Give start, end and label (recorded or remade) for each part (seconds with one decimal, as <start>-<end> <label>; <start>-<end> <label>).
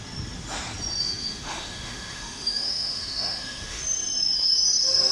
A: 0.0-1.0 recorded; 1.0-3.8 remade; 3.8-5.1 recorded